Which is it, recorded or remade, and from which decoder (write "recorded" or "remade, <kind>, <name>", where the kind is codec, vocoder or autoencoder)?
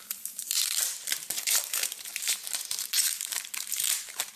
remade, vocoder, BigVGAN v2